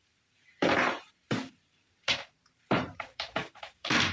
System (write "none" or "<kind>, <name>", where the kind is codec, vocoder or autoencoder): vocoder, BigVGAN v2